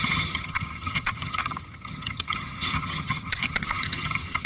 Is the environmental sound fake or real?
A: fake